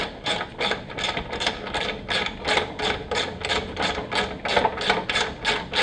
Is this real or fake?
real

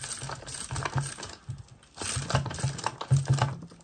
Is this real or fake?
real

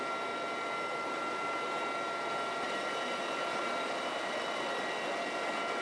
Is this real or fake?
real